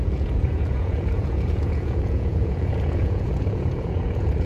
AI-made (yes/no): yes